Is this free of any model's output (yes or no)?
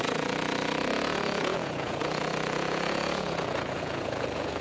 no